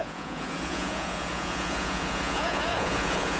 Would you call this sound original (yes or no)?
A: no